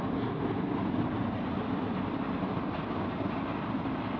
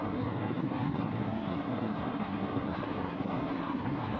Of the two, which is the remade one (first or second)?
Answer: second